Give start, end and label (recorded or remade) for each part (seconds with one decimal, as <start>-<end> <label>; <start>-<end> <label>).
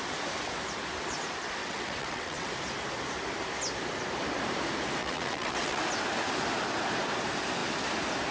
0.0-1.6 recorded; 1.6-2.5 remade; 2.5-5.0 recorded; 5.0-5.8 remade; 5.8-8.3 recorded